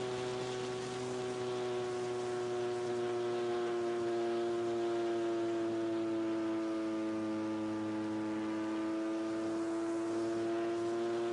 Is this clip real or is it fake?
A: real